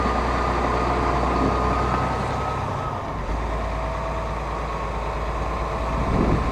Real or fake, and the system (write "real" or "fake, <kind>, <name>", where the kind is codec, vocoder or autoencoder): real